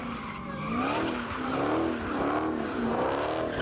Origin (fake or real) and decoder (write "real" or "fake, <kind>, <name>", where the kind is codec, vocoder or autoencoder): real